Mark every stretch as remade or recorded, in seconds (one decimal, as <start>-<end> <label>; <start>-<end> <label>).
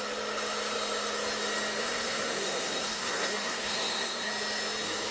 0.0-1.8 recorded; 1.8-4.3 remade; 4.3-5.1 recorded